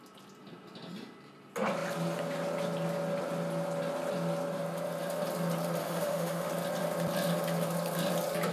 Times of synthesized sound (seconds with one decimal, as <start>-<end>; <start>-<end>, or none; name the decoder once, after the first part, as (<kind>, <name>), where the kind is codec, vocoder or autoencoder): 5.8-6.5 (autoencoder, DAC-VAE)